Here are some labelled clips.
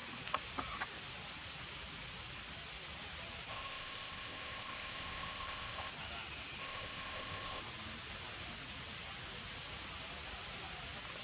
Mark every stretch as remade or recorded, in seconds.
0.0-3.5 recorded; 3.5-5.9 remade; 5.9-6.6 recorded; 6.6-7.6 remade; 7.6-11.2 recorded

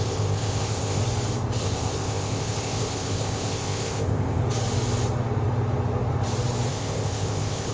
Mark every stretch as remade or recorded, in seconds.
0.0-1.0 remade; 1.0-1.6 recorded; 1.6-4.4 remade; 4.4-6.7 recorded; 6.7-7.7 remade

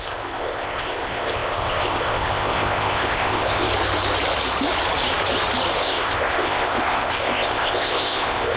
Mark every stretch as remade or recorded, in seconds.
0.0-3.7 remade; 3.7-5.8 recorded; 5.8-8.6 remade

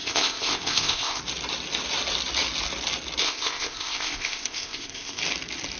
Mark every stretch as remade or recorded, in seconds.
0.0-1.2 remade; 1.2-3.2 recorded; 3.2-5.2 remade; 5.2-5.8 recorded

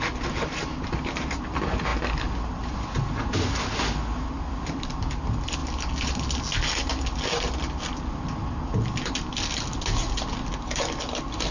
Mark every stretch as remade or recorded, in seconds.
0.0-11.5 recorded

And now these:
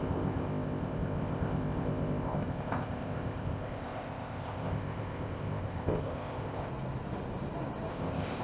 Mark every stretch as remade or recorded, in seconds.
0.0-6.7 remade; 6.7-7.9 recorded; 7.9-8.4 remade